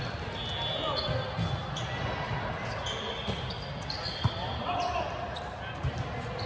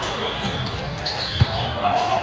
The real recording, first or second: first